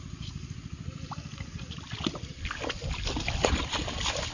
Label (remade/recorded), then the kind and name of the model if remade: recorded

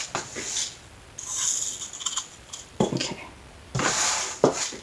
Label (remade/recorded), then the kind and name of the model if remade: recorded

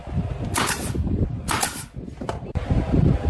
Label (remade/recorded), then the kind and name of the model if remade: recorded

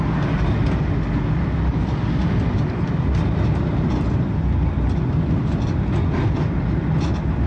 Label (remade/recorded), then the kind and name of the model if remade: recorded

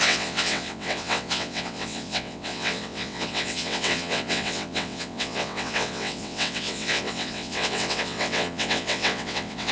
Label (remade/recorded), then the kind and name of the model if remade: remade, vocoder, WaveNeXt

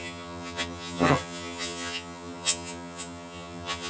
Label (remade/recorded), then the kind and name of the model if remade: remade, vocoder, HiFi-GAN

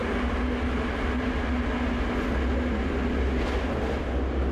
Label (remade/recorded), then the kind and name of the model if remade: recorded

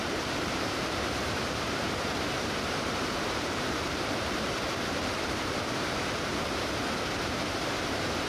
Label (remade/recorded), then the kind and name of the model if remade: remade, vocoder, BigVGAN v2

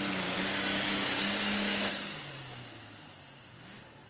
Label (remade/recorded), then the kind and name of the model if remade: recorded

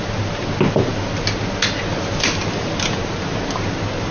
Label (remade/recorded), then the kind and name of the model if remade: recorded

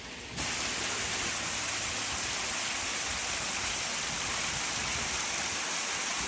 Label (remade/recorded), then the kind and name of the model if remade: recorded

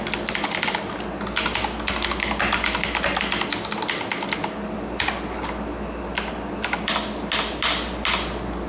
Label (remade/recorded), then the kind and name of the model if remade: recorded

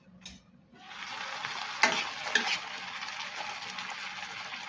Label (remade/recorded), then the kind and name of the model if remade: recorded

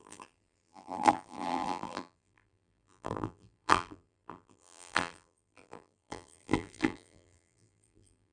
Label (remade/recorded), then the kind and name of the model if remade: remade, vocoder, BigVGAN v2